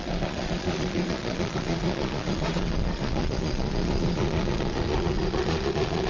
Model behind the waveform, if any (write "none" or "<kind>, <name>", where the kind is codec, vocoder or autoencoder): vocoder, Vocos